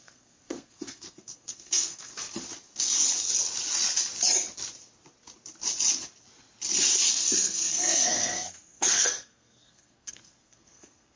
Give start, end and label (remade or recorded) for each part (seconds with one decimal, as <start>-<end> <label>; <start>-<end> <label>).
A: 0.0-2.1 remade; 2.1-7.1 recorded; 7.1-11.2 remade